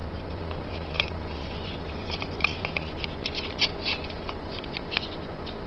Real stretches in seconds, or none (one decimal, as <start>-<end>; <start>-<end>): none